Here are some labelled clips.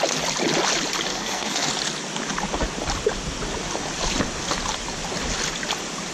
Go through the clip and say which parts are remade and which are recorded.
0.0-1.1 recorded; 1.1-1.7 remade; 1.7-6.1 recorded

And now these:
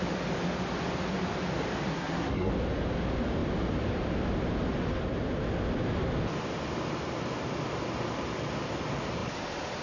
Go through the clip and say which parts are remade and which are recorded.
0.0-1.9 recorded; 1.9-2.5 remade; 2.5-9.8 recorded

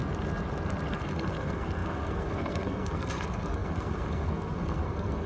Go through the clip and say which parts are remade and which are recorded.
0.0-0.9 recorded; 0.9-5.3 remade

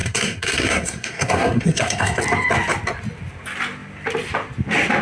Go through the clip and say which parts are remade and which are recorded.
0.0-2.2 remade; 2.2-5.0 recorded